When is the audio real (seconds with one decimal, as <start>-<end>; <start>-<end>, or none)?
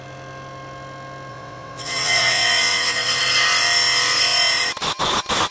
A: 0.0-1.3; 3.2-5.5